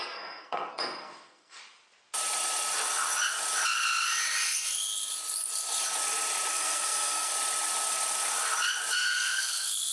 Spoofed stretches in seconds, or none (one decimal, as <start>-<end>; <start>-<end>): 0.0-1.6; 6.5-7.3; 8.9-9.9